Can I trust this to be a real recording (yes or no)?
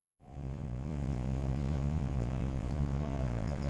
no